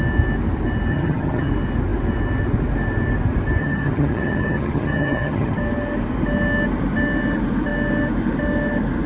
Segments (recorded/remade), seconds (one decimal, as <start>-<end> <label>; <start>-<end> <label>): 0.0-0.9 recorded; 0.9-1.5 remade; 1.5-3.6 recorded; 3.6-5.6 remade; 5.6-9.1 recorded